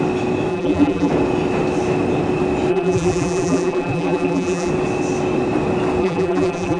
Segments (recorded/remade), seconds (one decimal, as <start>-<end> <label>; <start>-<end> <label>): 0.0-0.5 recorded; 0.5-1.1 remade; 1.1-2.7 recorded; 2.7-4.7 remade; 4.7-6.0 recorded; 6.0-6.8 remade